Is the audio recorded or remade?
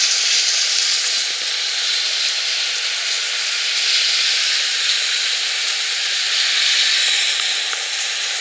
recorded